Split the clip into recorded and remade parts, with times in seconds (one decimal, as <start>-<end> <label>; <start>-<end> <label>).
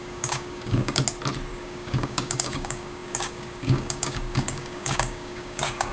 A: 0.0-1.0 remade; 1.0-1.5 recorded; 1.5-5.9 remade